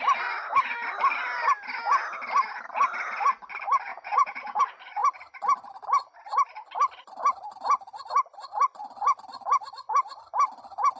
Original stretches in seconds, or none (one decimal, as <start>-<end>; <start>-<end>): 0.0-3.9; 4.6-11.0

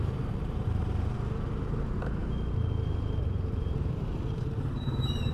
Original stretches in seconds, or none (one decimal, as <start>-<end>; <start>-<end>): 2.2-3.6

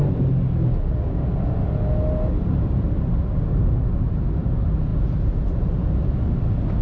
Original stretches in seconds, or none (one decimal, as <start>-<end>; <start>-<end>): 0.0-6.8

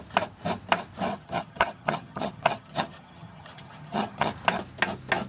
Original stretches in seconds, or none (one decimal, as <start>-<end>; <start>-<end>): 0.0-1.1; 4.3-5.3